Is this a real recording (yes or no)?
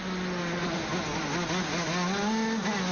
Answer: yes